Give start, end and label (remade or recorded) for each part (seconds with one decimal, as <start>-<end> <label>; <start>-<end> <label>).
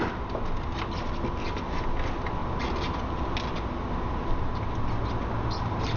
0.0-6.0 recorded